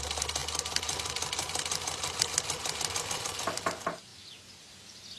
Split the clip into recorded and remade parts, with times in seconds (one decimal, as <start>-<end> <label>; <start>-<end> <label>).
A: 0.0-5.2 recorded